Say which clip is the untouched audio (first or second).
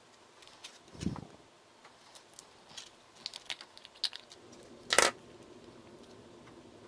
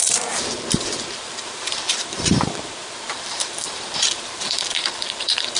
first